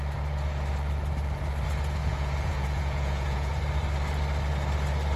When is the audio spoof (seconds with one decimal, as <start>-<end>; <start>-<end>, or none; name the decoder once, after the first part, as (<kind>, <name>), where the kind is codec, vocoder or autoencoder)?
2.0-3.5 (vocoder, Vocos)